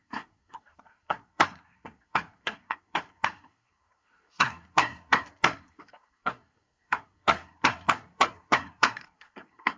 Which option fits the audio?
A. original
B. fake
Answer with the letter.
B